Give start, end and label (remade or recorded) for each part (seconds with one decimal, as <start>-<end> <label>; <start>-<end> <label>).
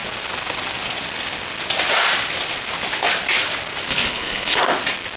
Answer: 0.0-3.9 recorded; 3.9-4.6 remade; 4.6-5.2 recorded